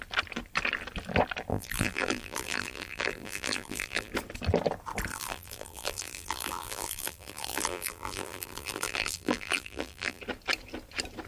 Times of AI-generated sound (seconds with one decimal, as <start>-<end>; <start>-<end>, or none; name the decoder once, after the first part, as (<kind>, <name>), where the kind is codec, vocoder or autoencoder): 1.5-4.1 (vocoder, BigVGAN v2); 5.1-10.2